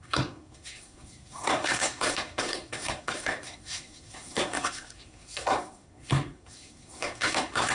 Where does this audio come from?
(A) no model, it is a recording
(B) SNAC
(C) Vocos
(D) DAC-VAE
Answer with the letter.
B